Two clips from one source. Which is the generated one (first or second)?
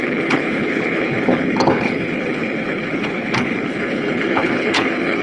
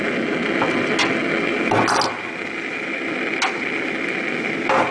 first